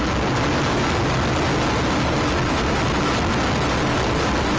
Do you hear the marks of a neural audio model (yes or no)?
no